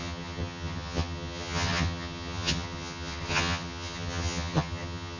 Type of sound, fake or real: fake